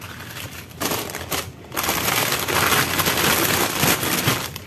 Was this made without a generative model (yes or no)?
yes